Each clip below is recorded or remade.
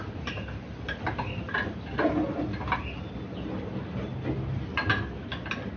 recorded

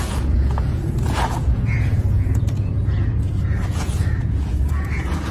remade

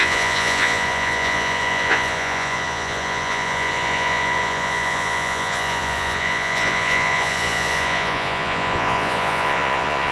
remade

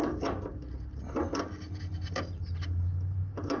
recorded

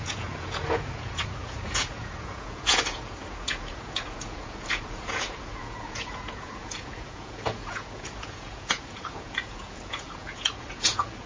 remade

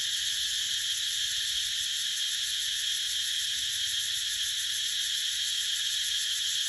recorded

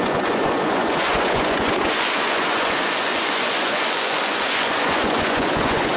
remade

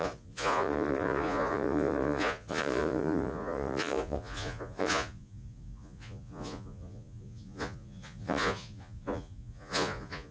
remade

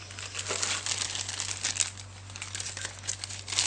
recorded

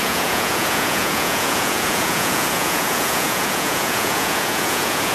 remade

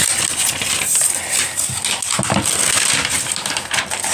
recorded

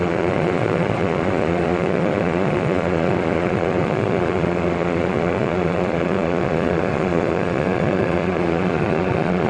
remade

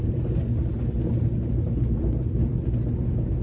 recorded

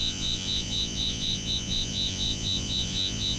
remade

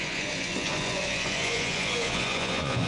remade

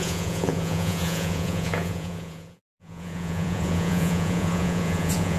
remade